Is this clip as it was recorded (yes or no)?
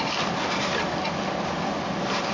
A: yes